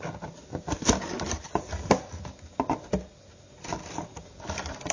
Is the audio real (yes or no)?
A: yes